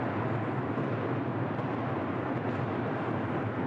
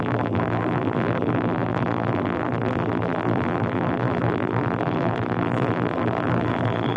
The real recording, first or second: first